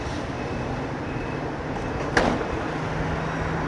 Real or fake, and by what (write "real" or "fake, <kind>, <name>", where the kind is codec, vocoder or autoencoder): real